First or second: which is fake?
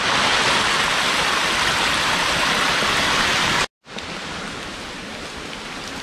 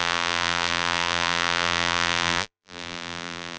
second